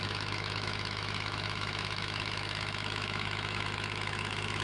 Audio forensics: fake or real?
fake